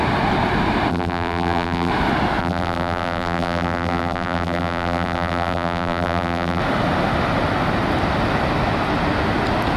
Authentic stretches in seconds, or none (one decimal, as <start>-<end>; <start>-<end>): 0.0-0.9; 1.9-2.4; 6.6-9.8